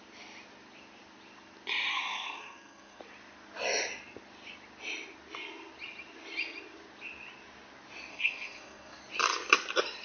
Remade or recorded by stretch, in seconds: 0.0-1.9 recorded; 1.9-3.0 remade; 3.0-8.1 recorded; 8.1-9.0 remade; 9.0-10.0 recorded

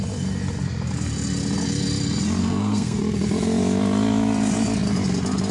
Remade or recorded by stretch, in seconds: 0.0-2.4 recorded; 2.4-3.0 remade; 3.0-5.5 recorded

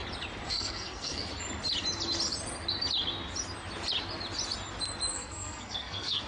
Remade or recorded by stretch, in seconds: 0.0-0.5 recorded; 0.5-1.3 remade; 1.3-5.1 recorded; 5.1-6.3 remade

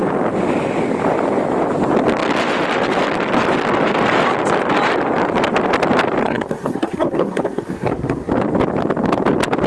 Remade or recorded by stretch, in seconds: 0.0-6.2 recorded; 6.2-8.3 remade; 8.3-9.7 recorded

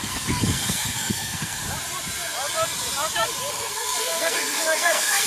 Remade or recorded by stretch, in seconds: 0.0-1.6 remade; 1.6-3.5 recorded; 3.5-5.3 remade